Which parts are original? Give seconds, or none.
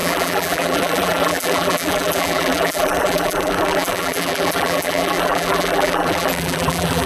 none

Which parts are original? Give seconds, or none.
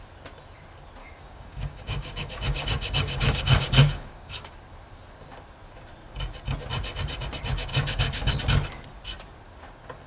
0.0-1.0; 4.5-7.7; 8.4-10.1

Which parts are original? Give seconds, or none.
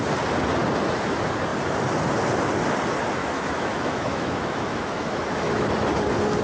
0.0-3.2; 5.7-6.4